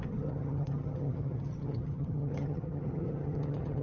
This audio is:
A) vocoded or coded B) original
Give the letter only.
A